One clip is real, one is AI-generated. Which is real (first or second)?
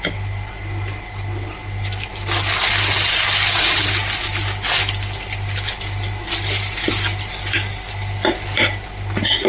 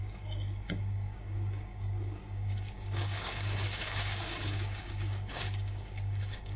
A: first